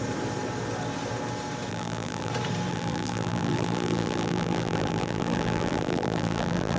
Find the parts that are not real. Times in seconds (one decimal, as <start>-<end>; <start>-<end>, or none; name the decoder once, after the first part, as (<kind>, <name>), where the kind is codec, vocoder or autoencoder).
1.7-2.3 (vocoder, BigVGAN v2); 2.7-6.8